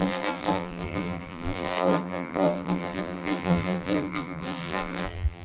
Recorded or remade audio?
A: remade